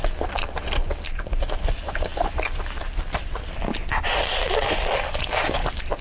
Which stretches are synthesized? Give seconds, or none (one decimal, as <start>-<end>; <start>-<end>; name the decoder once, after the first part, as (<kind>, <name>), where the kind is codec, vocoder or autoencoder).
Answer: none